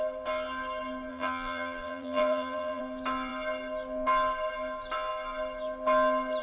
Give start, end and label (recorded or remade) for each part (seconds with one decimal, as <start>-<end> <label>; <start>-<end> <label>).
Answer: 0.0-1.1 recorded; 1.1-2.8 remade; 2.8-6.4 recorded